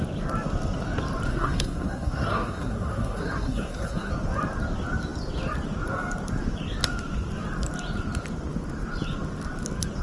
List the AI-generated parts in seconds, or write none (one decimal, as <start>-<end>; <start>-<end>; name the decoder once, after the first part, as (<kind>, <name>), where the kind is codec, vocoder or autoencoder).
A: 1.3-4.1 (codec, SNAC)